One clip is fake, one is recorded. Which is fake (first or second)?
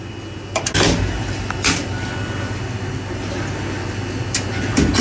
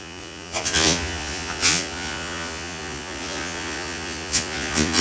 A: second